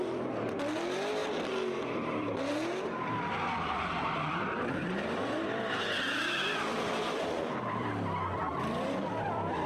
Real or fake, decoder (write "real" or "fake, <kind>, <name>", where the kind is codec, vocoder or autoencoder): fake, vocoder, BigVGAN v2